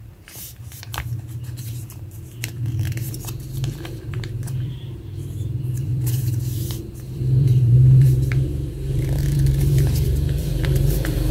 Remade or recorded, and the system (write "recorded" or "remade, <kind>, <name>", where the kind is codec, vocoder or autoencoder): remade, vocoder, BigVGAN v2